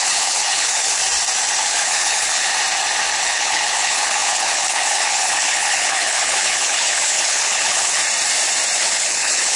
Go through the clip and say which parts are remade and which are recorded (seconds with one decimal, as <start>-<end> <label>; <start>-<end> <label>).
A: 0.0-1.0 remade; 1.0-1.6 recorded; 1.6-2.5 remade; 2.5-3.2 recorded; 3.2-8.0 remade; 8.0-8.8 recorded; 8.8-9.6 remade